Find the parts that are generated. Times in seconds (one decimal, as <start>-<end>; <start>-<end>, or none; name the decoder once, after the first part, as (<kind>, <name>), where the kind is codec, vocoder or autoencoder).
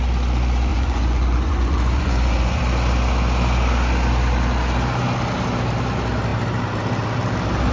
0.7-2.6 (vocoder, Vocos)